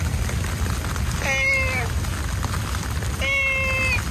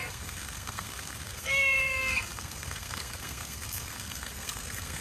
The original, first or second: first